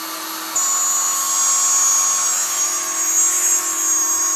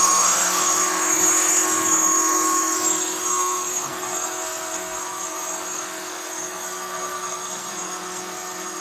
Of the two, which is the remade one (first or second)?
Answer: second